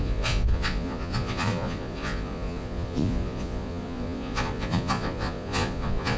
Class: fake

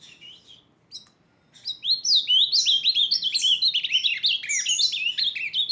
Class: real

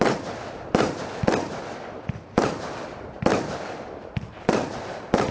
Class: real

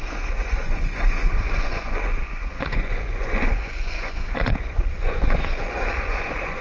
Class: fake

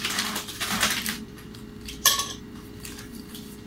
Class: fake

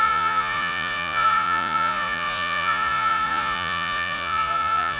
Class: fake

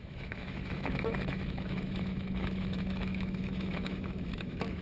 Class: fake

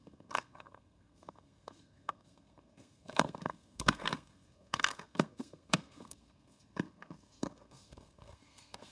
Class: fake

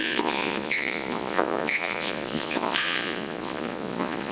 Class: fake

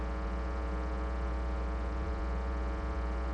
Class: fake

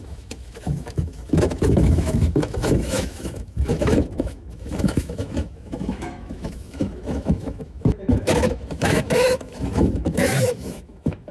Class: fake